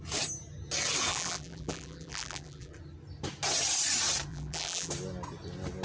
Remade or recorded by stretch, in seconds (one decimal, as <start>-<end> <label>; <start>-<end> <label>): 0.0-1.1 recorded; 1.1-2.7 remade; 2.7-4.3 recorded; 4.3-4.9 remade; 4.9-5.8 recorded